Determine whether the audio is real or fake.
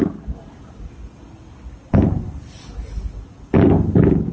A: real